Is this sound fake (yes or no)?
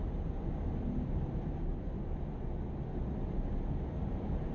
no